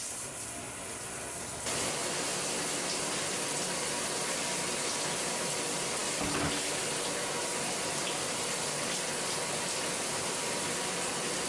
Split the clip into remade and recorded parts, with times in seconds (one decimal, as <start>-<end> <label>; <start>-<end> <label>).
0.0-11.5 recorded